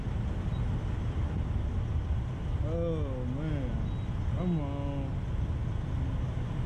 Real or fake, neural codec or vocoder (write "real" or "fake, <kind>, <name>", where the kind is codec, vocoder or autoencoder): real